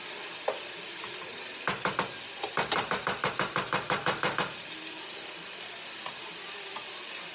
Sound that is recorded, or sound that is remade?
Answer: recorded